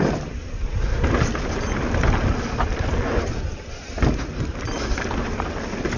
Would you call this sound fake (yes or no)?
no